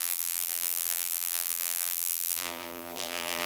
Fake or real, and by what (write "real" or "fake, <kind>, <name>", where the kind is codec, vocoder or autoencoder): fake, vocoder, BigVGAN v2